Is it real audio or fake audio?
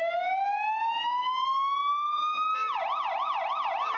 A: real